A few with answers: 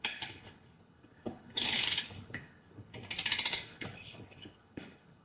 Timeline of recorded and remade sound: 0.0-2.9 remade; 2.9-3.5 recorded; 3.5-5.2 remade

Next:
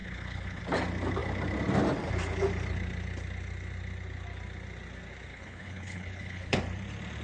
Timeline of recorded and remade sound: 0.0-0.6 remade; 0.6-5.3 recorded; 5.3-6.6 remade; 6.6-7.2 recorded